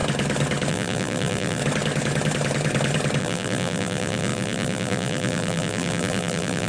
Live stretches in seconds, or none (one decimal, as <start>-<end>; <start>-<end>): 0.0-0.7; 1.6-3.2

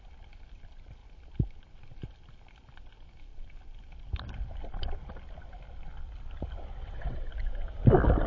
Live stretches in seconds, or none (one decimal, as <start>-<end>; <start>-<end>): 0.0-6.7; 7.3-8.3